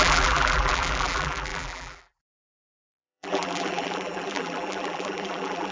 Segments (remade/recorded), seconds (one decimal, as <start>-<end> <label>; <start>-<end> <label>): 0.0-5.7 remade